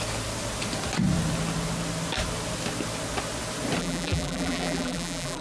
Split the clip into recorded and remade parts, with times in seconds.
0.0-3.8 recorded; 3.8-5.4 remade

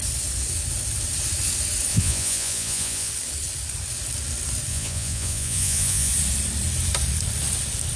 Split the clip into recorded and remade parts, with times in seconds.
0.0-1.9 recorded; 1.9-3.1 remade; 3.1-4.7 recorded; 4.7-6.1 remade; 6.1-8.0 recorded

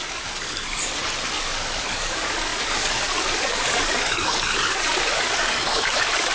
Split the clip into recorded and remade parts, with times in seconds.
0.0-0.8 remade; 0.8-1.4 recorded; 1.4-6.3 remade